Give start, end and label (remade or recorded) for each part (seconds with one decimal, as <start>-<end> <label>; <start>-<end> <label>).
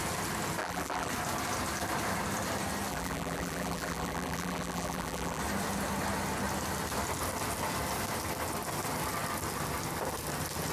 0.0-0.6 recorded; 0.6-1.1 remade; 1.1-2.9 recorded; 2.9-5.4 remade; 5.4-10.7 recorded